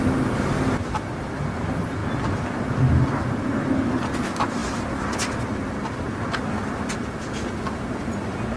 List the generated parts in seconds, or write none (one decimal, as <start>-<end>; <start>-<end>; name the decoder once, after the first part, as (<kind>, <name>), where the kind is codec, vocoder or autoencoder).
none